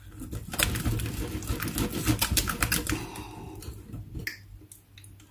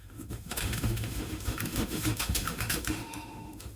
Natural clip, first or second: first